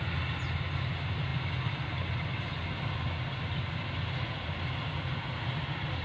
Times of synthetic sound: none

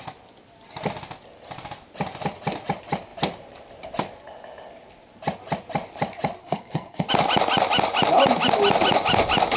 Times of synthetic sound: 6.4-7.1 (codec, SNAC)

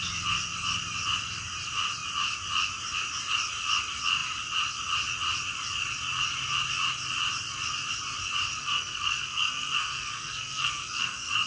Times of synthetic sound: 8.6-11.5 (codec, SNAC)

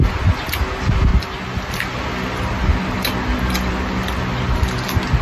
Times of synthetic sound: none

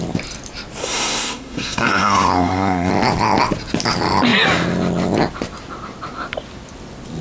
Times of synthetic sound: 0.8-2.9 (codec, SNAC)

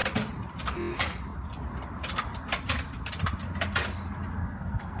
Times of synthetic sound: 4.4-5.0 (codec, SNAC)

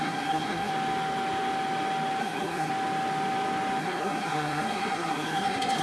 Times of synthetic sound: 0.0-0.7 (codec, SNAC); 2.2-2.7; 3.8-5.8

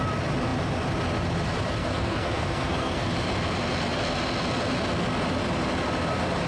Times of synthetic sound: 1.8-3.1 (codec, SNAC)